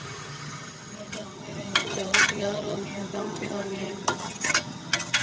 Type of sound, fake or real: fake